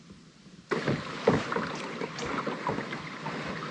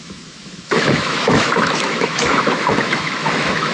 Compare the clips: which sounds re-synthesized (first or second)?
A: second